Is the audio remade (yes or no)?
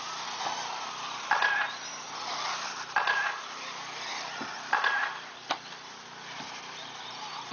no